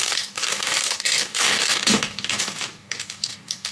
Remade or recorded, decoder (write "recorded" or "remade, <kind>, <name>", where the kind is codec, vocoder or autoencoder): remade, codec, DAC